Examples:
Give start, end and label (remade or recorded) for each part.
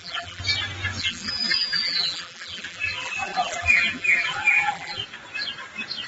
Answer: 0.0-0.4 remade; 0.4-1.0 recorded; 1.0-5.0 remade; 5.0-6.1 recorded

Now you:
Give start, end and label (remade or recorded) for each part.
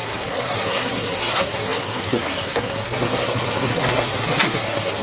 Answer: 0.0-5.0 remade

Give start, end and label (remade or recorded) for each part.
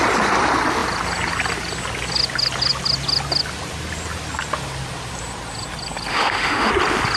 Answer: 0.0-6.1 recorded; 6.1-6.7 remade; 6.7-7.2 recorded